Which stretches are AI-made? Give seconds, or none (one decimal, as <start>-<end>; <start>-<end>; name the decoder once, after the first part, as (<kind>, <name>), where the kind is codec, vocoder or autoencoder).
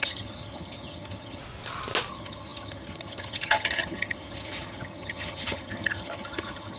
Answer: 0.0-1.4 (vocoder, HiFi-GAN); 2.1-6.8